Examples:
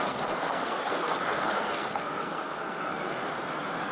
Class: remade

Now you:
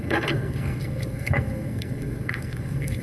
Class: remade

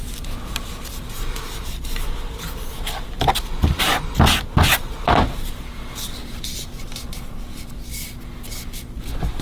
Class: recorded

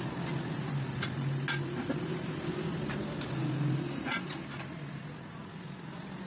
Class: recorded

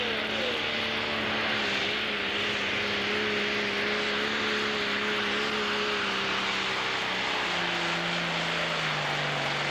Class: recorded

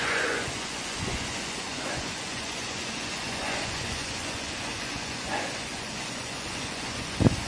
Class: remade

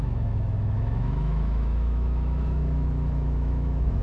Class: remade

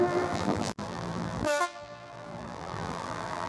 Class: remade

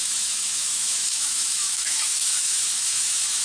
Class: remade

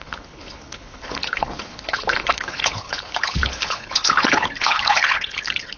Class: remade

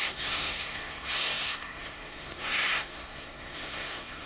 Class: remade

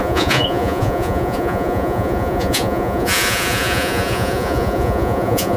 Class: remade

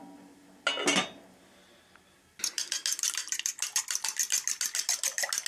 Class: recorded